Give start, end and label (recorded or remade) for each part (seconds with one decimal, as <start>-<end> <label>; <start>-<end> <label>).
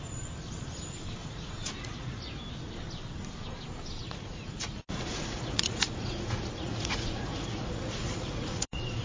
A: 0.0-1.2 recorded; 1.2-2.2 remade; 2.2-4.0 recorded; 4.0-9.0 remade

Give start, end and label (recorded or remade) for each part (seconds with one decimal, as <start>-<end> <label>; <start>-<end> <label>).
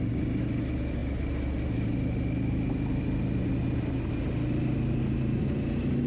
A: 0.0-6.1 recorded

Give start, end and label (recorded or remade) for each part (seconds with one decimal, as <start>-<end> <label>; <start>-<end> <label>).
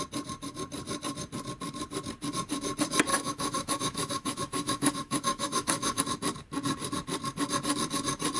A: 0.0-3.1 recorded; 3.1-6.0 remade; 6.0-8.4 recorded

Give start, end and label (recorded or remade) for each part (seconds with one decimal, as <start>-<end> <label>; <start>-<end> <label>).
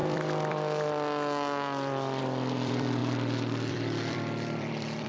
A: 0.0-3.0 remade; 3.0-3.7 recorded; 3.7-5.1 remade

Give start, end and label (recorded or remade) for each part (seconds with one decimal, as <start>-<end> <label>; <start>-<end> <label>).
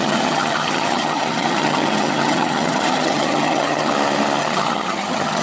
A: 0.0-3.9 remade; 3.9-4.4 recorded; 4.4-5.4 remade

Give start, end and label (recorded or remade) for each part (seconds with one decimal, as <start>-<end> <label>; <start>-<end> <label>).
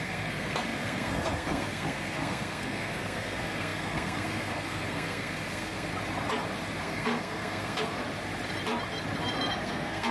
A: 0.0-5.9 remade; 5.9-6.8 recorded; 6.8-8.0 remade; 8.0-9.5 recorded; 9.5-10.1 remade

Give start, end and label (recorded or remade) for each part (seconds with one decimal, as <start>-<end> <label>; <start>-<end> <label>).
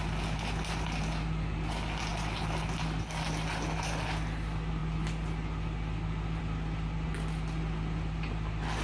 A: 0.0-8.8 recorded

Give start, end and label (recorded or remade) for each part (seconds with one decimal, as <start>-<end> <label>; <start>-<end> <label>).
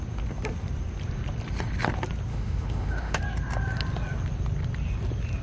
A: 0.0-2.3 recorded; 2.3-3.2 remade; 3.2-5.4 recorded